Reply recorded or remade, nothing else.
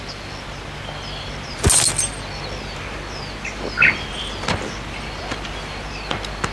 recorded